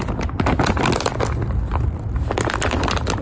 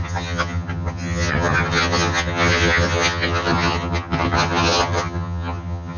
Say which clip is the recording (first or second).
first